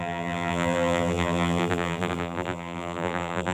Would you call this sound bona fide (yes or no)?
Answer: no